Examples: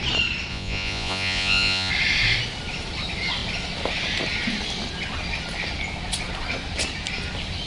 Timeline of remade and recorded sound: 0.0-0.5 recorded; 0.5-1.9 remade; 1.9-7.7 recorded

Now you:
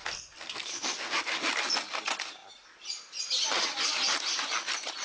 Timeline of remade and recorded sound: 0.0-1.1 remade; 1.1-5.0 recorded

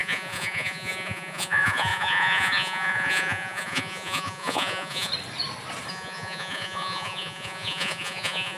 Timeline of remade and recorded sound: 0.0-5.1 remade; 5.1-5.9 recorded; 5.9-8.6 remade

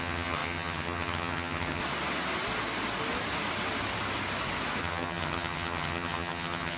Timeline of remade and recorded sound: 0.0-1.8 remade; 1.8-4.8 recorded; 4.8-6.8 remade

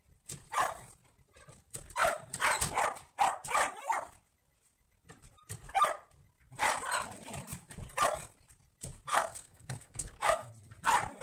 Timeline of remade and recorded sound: 0.0-9.1 recorded; 9.1-10.5 remade; 10.5-11.2 recorded